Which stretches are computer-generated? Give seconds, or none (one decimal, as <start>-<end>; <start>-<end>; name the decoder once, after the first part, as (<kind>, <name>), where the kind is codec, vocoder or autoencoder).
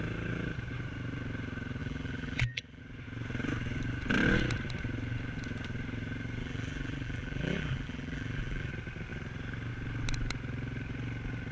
1.8-2.8 (vocoder, BigVGAN v2); 6.4-8.7